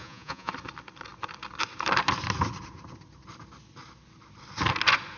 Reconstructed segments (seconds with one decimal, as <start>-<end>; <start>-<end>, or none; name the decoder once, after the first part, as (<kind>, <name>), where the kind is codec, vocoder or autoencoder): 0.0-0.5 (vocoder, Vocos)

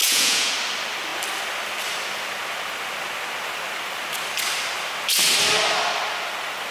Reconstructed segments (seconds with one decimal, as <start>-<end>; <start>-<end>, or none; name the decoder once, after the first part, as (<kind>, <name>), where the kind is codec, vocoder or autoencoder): 0.0-0.5 (vocoder, Vocos)

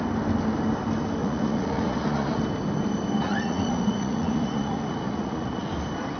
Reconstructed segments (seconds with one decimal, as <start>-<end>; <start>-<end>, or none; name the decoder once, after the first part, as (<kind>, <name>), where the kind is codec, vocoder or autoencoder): 1.2-2.4 (vocoder, Vocos); 3.2-5.7